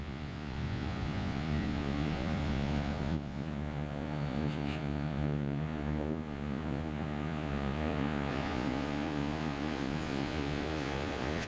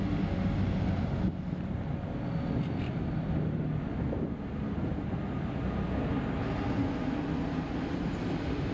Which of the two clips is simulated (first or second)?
first